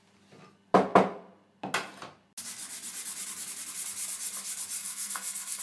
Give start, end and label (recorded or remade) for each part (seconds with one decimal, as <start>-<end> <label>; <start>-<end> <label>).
0.0-4.8 recorded; 4.8-5.6 remade